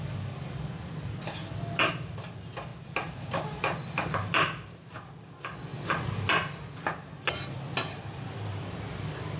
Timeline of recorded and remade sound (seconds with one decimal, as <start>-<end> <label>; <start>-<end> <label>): 0.0-9.4 recorded